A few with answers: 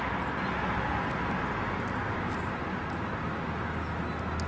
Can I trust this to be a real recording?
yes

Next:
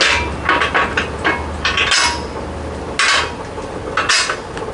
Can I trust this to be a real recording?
yes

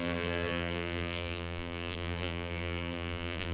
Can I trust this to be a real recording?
no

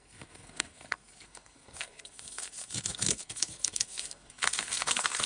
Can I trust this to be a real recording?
no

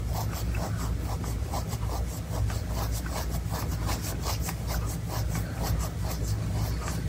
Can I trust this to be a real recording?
yes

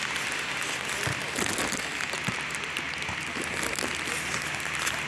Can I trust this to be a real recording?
yes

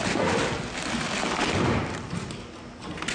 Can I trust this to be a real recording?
yes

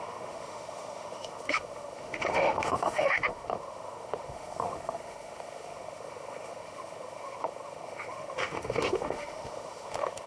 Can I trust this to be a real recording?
no